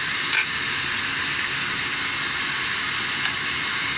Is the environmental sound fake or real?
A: real